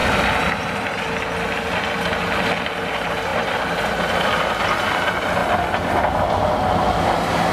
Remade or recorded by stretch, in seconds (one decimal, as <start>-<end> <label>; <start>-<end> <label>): 0.0-7.5 recorded